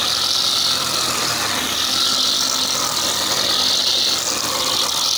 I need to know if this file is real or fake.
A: real